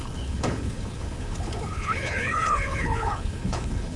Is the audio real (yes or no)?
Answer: no